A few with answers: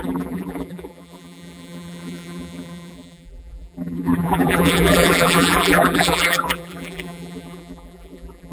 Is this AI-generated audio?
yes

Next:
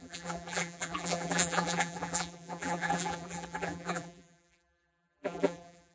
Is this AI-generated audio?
yes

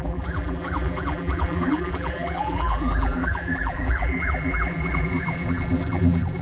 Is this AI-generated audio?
yes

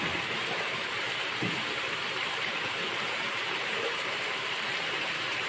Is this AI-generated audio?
yes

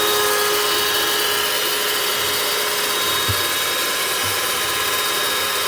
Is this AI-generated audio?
no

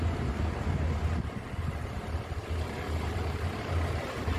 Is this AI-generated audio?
yes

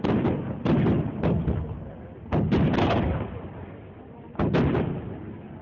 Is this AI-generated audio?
no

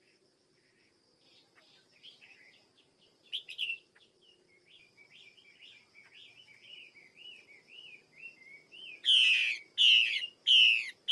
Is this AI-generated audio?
no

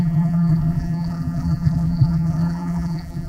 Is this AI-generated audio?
yes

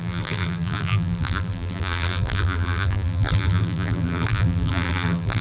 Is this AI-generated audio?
yes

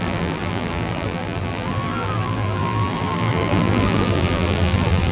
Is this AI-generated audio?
yes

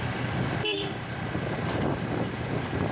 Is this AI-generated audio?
yes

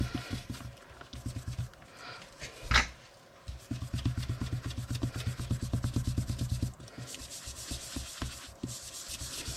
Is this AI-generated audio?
no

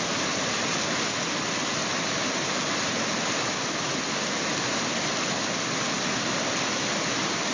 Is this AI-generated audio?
no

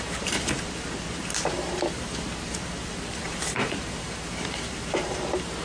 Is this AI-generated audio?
yes